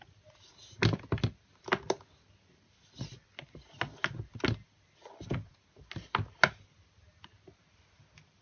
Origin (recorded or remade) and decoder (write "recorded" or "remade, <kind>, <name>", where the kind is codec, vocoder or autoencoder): recorded